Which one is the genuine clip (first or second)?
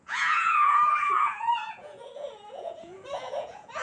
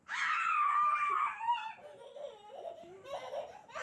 second